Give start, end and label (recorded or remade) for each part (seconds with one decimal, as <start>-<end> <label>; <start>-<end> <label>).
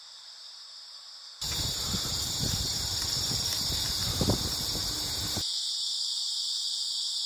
0.0-7.3 remade